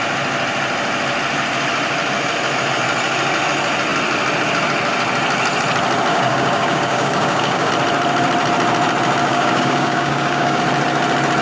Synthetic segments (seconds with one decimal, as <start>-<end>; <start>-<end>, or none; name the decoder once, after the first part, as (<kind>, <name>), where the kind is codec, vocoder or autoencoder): 6.1-7.7 (codec, DAC); 9.3-10.6

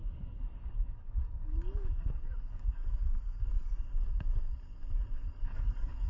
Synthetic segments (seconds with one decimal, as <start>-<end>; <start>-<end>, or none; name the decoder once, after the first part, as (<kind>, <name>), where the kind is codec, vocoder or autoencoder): 0.0-3.4 (codec, DAC); 5.5-6.1

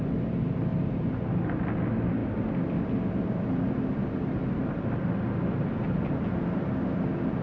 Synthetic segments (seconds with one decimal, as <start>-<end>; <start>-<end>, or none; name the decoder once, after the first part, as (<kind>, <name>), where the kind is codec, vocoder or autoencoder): none

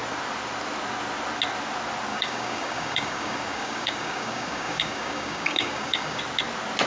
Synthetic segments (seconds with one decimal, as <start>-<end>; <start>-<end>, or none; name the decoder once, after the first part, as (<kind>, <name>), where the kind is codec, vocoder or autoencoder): 2.1-6.2 (codec, DAC)